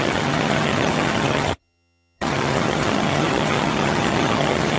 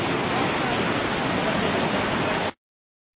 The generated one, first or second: first